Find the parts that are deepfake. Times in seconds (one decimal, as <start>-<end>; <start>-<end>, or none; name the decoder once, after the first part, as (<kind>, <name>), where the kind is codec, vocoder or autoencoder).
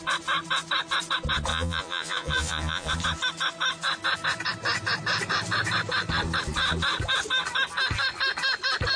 1.5-2.9 (vocoder, Vocos)